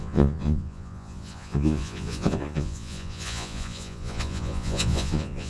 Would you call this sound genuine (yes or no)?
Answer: no